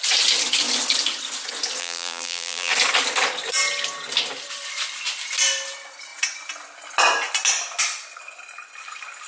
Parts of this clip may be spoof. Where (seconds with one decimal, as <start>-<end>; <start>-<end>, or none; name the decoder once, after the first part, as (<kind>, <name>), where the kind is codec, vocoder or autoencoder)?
1.8-2.7 (vocoder, BigVGAN v2)